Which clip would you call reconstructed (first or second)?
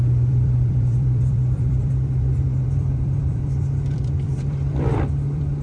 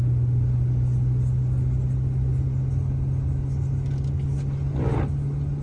first